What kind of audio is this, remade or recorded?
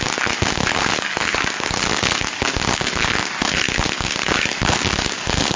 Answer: remade